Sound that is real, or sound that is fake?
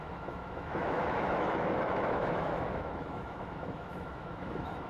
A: fake